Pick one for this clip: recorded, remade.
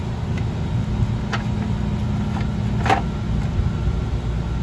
recorded